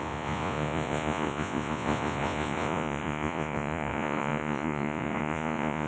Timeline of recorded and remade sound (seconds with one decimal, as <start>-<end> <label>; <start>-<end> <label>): 0.0-5.9 remade